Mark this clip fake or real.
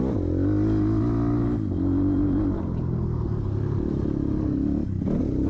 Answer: real